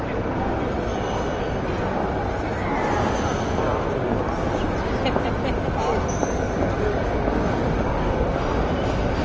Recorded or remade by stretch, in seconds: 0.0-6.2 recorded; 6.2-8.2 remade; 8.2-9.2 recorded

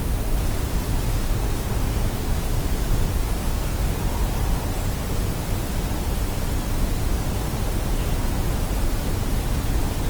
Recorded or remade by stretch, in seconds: 0.0-1.1 recorded; 1.1-3.8 remade; 3.8-10.1 recorded

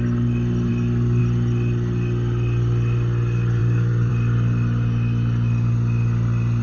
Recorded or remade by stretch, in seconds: 0.0-3.6 recorded; 3.6-4.1 remade; 4.1-6.6 recorded

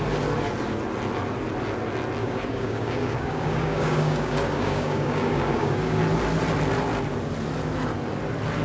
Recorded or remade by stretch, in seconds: 0.0-2.2 recorded; 2.2-6.0 remade; 6.0-8.6 recorded